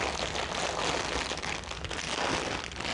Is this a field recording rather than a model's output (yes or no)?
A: yes